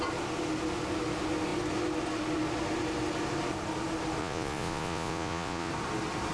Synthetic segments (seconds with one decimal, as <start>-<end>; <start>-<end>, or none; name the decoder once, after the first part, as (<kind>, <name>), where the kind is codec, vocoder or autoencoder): 4.2-5.7 (vocoder, Vocos)